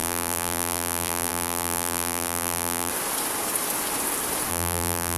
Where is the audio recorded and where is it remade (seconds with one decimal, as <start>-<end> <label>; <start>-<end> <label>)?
0.0-2.9 remade; 2.9-4.5 recorded; 4.5-5.2 remade